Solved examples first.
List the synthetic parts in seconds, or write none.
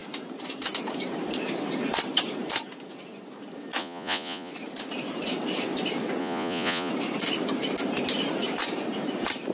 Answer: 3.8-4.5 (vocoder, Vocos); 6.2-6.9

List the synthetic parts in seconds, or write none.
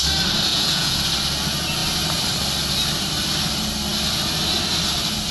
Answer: 0.5-1.0 (vocoder, Vocos)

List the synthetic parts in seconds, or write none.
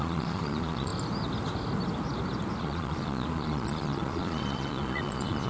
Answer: 0.0-0.9 (vocoder, Vocos); 2.6-5.5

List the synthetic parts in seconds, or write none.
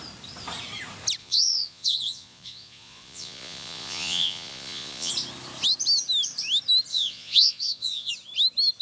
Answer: 1.2-5.1 (vocoder, Vocos); 6.9-8.1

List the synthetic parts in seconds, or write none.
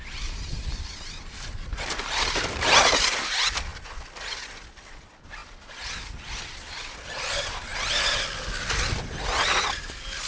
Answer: none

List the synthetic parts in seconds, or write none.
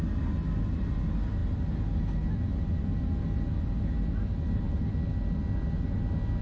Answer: none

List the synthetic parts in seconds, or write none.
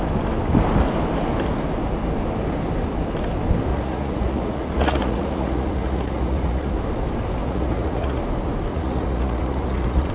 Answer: 3.7-6.7 (vocoder, Vocos); 7.4-8.2; 8.7-10.1